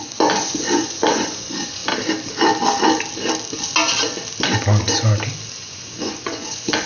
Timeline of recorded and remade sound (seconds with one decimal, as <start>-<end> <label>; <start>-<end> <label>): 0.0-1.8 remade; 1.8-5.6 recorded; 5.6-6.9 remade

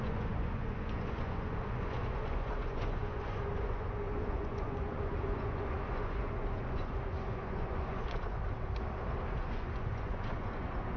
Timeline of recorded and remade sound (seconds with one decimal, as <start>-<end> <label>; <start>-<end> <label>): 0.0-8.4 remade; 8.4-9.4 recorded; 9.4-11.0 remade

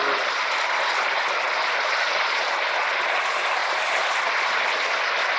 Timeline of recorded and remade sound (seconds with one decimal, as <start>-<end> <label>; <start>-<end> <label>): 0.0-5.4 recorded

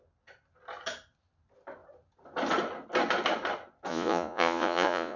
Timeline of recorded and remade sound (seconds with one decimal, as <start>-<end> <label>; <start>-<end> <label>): 0.0-3.9 recorded; 3.9-5.2 remade

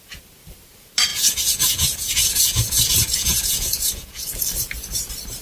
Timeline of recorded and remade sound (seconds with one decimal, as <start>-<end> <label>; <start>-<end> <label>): 0.0-1.1 recorded; 1.1-4.3 remade; 4.3-5.4 recorded